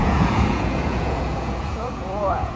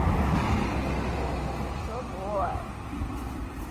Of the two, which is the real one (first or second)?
second